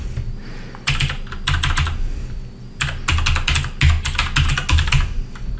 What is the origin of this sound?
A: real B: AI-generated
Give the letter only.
A